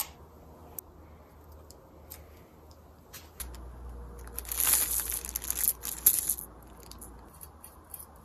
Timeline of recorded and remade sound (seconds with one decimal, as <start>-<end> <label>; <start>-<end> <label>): 0.0-8.2 recorded